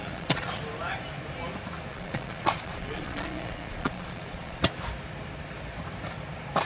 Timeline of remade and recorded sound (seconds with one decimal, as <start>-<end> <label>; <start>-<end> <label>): 0.0-0.6 remade; 0.6-1.9 recorded; 1.9-4.6 remade; 4.6-6.7 recorded